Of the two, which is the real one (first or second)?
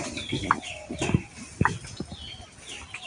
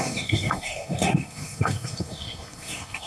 first